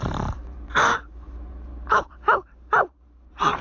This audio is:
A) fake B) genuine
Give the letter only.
A